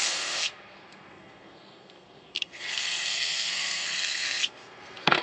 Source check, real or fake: fake